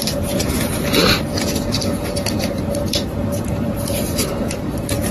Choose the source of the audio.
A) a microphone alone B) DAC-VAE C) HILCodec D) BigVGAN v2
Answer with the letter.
D